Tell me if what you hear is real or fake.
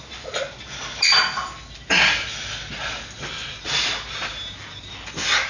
real